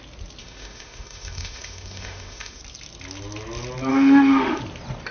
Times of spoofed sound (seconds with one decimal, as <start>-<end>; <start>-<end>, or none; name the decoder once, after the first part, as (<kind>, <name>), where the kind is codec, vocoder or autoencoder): 0.4-2.6 (autoencoder, DAC-VAE); 3.9-4.6